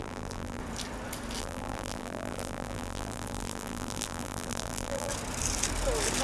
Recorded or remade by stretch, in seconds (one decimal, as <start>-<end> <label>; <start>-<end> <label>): 0.0-0.6 remade; 0.6-1.4 recorded; 1.4-5.1 remade; 5.1-6.2 recorded